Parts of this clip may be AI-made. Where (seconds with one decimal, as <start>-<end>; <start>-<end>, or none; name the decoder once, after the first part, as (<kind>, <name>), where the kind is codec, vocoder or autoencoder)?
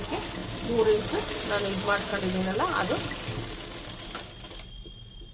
none